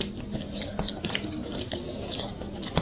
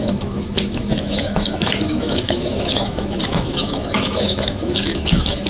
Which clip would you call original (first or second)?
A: first